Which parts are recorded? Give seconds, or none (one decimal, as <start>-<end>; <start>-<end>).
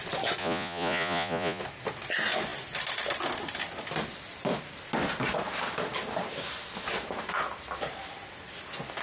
0.0-0.4; 1.6-9.0